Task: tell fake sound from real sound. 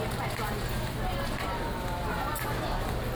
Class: real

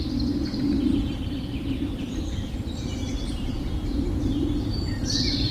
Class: fake